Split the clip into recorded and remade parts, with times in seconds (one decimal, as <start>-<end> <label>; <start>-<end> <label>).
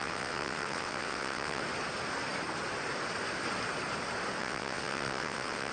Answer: 0.0-1.6 remade; 1.6-4.4 recorded; 4.4-5.7 remade